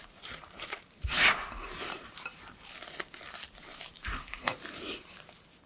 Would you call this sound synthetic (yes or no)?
yes